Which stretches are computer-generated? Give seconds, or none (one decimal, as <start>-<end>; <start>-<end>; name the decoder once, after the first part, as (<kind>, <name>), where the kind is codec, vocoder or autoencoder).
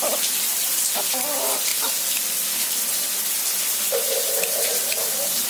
0.0-1.7 (vocoder, BigVGAN v2); 3.6-5.5